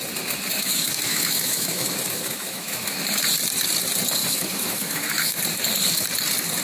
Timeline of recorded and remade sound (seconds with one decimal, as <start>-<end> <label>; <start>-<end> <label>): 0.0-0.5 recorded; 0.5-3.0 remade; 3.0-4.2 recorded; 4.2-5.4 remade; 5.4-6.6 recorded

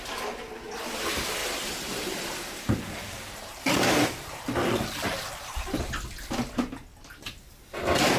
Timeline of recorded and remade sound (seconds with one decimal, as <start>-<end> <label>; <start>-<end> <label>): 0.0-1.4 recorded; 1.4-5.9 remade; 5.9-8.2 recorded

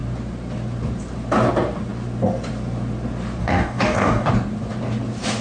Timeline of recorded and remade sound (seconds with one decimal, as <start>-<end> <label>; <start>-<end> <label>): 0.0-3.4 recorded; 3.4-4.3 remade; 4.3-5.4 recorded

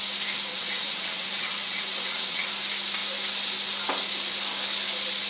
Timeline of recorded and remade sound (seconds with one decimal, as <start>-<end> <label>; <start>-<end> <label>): 0.0-0.5 recorded; 0.5-2.5 remade; 2.5-5.3 recorded

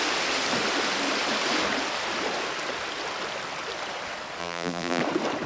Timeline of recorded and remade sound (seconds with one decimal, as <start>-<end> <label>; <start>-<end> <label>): 0.0-4.4 recorded; 4.4-5.0 remade; 5.0-5.5 recorded